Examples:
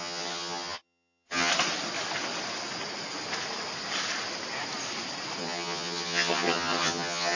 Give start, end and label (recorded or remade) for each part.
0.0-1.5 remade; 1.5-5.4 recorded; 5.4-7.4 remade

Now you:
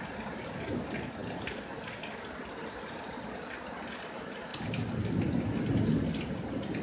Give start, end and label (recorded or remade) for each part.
0.0-6.8 recorded